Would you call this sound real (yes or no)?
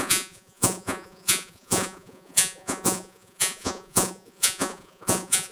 no